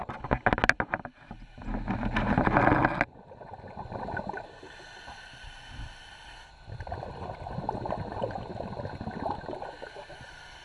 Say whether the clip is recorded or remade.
recorded